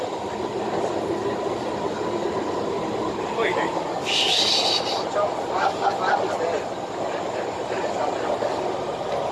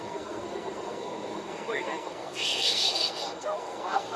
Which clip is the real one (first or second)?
first